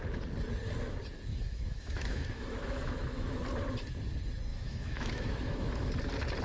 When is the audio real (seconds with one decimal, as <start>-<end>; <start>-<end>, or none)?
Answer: 0.0-1.3; 3.4-4.5; 5.9-6.4